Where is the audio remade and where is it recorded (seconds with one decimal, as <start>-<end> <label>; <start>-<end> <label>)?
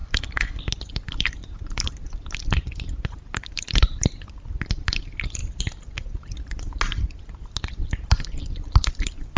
0.0-0.6 remade; 0.6-9.4 recorded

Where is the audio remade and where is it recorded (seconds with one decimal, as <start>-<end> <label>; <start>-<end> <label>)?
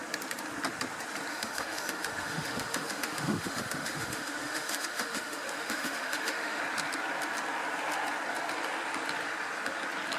0.0-1.3 recorded; 1.3-6.6 remade; 6.6-10.2 recorded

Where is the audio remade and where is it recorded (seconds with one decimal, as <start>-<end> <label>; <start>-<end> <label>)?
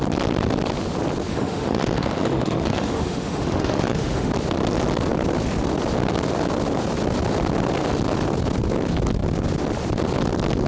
0.0-1.3 recorded; 1.3-4.3 remade; 4.3-10.7 recorded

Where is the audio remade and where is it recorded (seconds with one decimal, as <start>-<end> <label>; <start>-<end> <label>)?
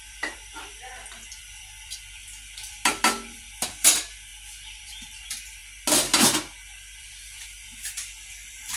0.0-5.6 remade; 5.6-7.0 recorded; 7.0-8.8 remade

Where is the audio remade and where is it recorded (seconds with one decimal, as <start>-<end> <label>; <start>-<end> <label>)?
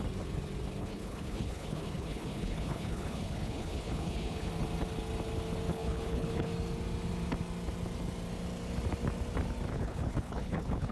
0.0-0.8 recorded; 0.8-4.5 remade; 4.5-5.7 recorded; 5.7-6.5 remade; 6.5-9.7 recorded; 9.7-10.9 remade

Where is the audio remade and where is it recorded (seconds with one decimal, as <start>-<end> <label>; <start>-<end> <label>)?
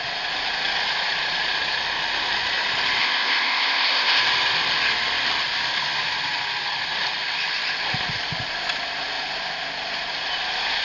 0.0-3.0 recorded; 3.0-4.2 remade; 4.2-10.8 recorded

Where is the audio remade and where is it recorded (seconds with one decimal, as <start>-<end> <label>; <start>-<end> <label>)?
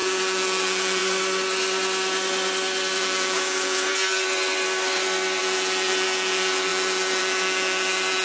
0.0-1.0 remade; 1.0-3.0 recorded; 3.0-3.9 remade; 3.9-5.4 recorded; 5.4-8.2 remade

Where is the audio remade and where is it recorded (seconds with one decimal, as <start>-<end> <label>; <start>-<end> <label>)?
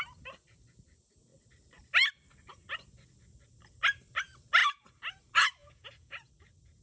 0.0-5.6 recorded; 5.6-6.3 remade; 6.3-6.8 recorded